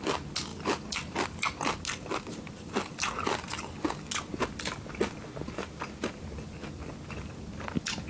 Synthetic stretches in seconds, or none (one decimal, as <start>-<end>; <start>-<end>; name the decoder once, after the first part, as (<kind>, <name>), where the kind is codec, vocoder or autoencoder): none

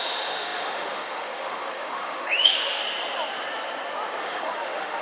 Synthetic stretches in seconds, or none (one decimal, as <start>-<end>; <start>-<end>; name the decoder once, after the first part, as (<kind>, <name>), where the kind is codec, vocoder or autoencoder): 0.0-2.8 (autoencoder, DAC-VAE); 4.2-5.0

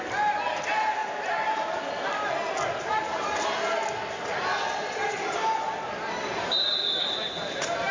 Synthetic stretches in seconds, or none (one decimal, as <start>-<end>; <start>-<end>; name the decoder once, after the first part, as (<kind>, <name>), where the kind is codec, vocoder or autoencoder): none

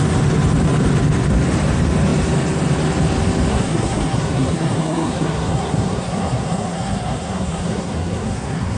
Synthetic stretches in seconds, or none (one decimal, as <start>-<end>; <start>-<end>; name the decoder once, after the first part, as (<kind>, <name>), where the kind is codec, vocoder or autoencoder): 3.5-8.8 (codec, SNAC)

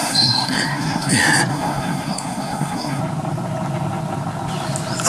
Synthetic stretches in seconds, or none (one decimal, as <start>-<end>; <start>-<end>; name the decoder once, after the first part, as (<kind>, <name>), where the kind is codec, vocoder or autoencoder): 0.0-1.1 (codec, SNAC); 1.5-3.0

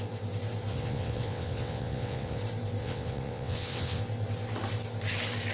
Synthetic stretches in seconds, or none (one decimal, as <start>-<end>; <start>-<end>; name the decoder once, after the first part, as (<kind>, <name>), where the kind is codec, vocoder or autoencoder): 0.7-2.4 (vocoder, WaveNeXt); 2.8-4.0

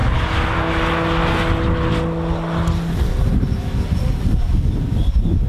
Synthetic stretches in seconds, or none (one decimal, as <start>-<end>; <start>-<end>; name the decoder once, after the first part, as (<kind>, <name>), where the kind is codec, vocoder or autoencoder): none